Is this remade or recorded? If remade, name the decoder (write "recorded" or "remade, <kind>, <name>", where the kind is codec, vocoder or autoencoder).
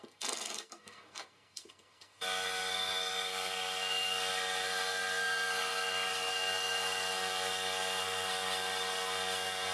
remade, codec, SNAC